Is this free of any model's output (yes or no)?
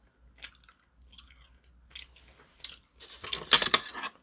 yes